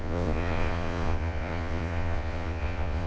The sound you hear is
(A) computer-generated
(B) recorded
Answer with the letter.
A